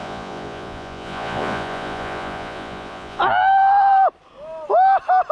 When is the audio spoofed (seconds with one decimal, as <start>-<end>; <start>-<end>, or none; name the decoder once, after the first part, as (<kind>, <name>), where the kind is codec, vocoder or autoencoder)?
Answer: 0.0-3.2 (vocoder, Vocos)